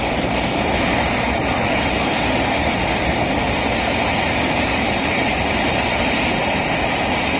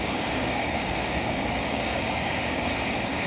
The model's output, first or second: second